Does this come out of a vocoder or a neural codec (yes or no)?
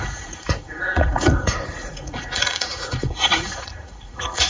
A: yes